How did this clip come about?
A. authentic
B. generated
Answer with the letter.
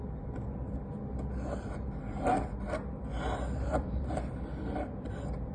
A